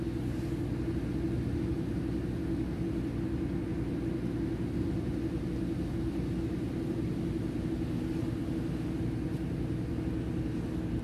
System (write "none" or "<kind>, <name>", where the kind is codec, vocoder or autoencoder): none